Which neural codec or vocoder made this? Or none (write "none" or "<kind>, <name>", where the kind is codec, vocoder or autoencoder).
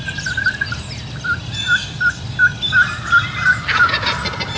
none